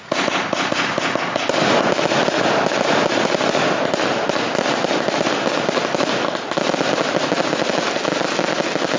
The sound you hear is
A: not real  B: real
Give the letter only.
B